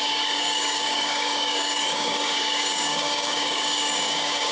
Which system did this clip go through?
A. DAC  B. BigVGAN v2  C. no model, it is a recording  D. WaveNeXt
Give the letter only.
A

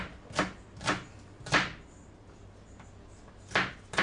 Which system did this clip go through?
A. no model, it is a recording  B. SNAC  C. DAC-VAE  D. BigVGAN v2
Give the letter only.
A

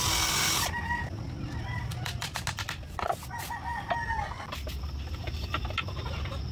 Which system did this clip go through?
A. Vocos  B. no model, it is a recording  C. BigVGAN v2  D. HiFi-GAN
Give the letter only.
B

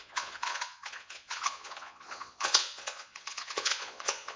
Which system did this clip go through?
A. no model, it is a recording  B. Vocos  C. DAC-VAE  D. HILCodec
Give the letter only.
B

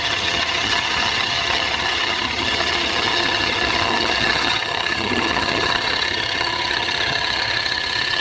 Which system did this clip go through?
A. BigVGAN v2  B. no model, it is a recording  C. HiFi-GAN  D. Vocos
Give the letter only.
C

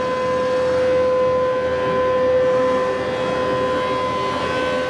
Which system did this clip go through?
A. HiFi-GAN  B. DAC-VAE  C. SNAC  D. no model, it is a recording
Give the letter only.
D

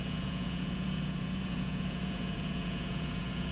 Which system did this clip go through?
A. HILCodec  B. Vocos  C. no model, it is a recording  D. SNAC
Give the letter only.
B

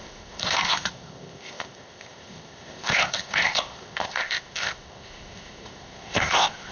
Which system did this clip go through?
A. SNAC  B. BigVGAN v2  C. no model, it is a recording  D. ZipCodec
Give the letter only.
D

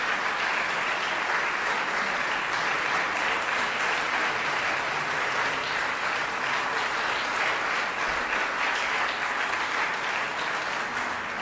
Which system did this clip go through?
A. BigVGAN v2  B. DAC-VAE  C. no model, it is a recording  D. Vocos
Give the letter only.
C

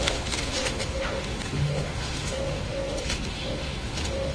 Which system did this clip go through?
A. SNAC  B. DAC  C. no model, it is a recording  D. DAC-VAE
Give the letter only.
D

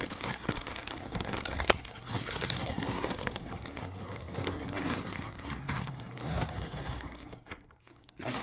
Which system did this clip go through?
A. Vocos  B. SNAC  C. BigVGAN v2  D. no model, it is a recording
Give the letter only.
B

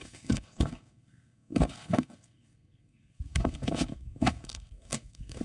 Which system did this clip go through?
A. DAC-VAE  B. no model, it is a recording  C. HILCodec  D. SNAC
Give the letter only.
D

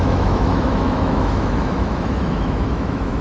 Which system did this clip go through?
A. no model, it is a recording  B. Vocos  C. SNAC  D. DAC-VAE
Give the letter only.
D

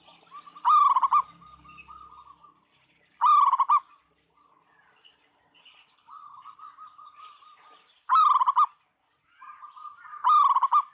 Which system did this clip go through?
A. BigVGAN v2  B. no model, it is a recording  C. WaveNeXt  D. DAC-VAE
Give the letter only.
A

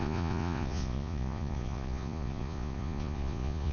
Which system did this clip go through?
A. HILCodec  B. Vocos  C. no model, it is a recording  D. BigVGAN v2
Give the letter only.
B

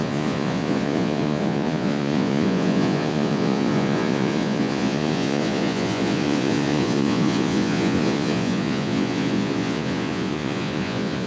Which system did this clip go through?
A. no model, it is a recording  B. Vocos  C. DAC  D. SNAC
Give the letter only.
B